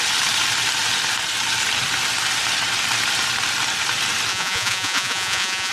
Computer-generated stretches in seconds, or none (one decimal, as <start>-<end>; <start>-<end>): 4.3-5.7